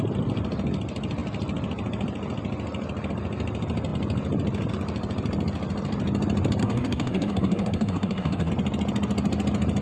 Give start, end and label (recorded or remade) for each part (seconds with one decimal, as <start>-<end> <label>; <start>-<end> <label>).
0.0-6.6 recorded; 6.6-8.5 remade; 8.5-9.8 recorded